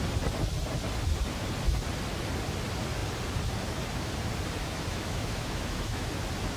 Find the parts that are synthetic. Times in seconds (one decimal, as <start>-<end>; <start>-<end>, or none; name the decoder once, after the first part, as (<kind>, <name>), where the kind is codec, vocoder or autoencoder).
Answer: 4.6-6.1 (autoencoder, DAC-VAE)